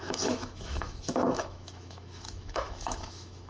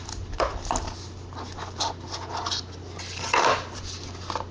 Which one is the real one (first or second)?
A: second